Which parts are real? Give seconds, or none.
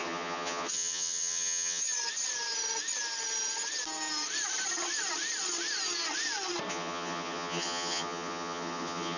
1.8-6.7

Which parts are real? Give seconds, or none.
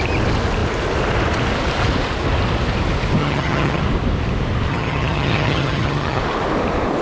0.0-3.2; 3.8-4.7; 6.2-7.0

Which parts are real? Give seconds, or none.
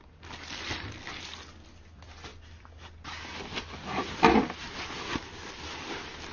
0.0-6.3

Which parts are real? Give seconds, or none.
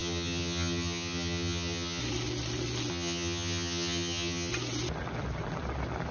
2.0-2.9; 4.5-6.1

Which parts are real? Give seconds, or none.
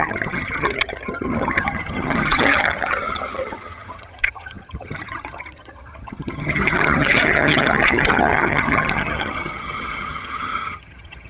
none